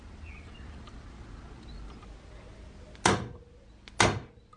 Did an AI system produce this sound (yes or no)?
no